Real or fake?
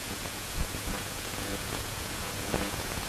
fake